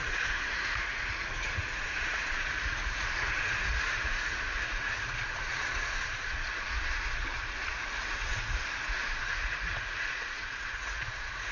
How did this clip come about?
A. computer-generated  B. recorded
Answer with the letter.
A